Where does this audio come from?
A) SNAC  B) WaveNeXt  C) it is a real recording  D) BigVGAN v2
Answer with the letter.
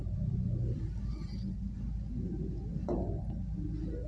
C